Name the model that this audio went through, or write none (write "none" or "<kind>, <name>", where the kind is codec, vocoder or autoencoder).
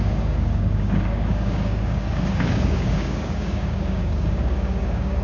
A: codec, DAC